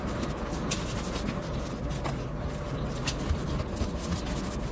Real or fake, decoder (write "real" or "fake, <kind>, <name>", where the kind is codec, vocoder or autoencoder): real